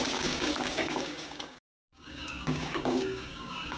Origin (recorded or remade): remade